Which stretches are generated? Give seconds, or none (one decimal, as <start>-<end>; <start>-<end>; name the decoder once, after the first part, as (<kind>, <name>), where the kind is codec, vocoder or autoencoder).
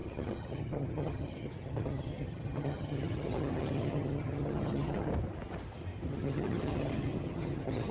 0.0-5.1 (vocoder, HiFi-GAN); 6.1-7.9